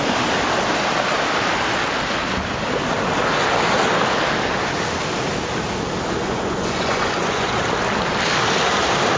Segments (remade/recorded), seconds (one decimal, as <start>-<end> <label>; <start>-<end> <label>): 0.0-6.2 recorded; 6.2-7.6 remade; 7.6-9.2 recorded